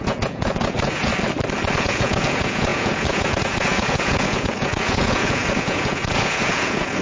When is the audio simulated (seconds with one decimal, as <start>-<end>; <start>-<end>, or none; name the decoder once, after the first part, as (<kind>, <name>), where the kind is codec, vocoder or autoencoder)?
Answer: 0.0-1.1 (vocoder, Vocos); 1.8-7.0